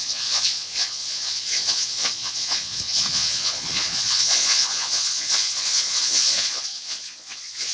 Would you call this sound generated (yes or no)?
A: yes